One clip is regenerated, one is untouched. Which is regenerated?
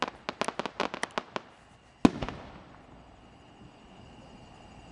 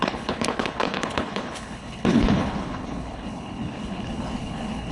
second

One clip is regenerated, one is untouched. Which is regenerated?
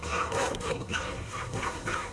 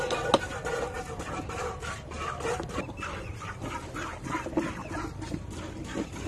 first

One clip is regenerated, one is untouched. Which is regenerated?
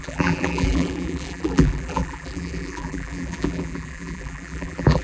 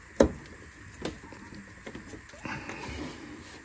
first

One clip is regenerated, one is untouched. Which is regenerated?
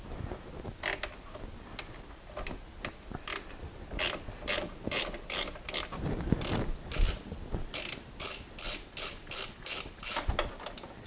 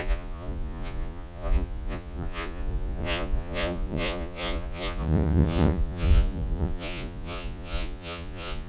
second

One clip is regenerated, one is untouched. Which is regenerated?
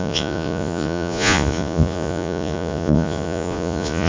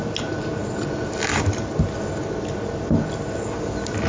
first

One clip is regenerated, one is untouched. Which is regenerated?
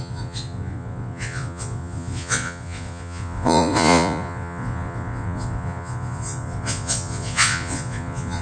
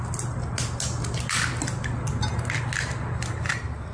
first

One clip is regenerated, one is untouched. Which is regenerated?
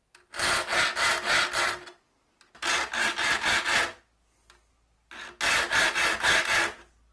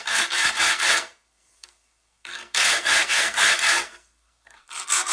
second